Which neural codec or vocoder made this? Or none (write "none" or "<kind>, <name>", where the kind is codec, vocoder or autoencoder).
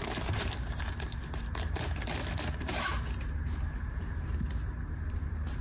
vocoder, BigVGAN v2